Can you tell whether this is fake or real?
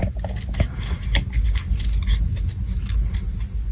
real